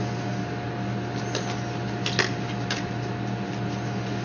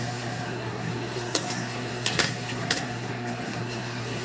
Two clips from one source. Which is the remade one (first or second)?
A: second